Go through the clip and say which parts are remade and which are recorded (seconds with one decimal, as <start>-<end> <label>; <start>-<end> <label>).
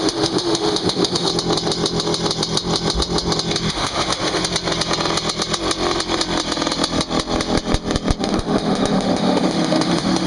0.0-1.3 remade; 1.3-3.7 recorded; 3.7-4.4 remade; 4.4-8.2 recorded; 8.2-10.3 remade